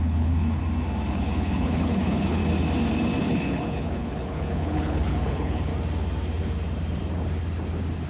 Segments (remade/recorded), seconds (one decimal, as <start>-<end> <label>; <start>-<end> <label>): 0.0-0.6 remade; 0.6-1.1 recorded; 1.1-2.4 remade; 2.4-3.2 recorded; 3.2-5.7 remade; 5.7-8.1 recorded